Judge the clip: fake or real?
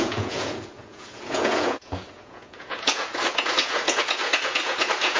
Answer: fake